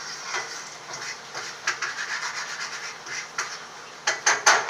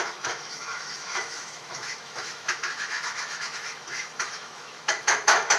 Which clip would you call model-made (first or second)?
second